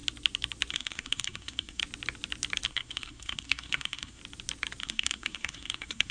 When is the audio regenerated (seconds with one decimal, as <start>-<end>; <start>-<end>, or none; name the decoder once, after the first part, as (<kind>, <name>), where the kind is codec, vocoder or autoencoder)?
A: 0.7-1.8 (codec, SNAC); 2.7-4.2; 4.8-6.1